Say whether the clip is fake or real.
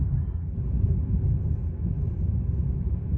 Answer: real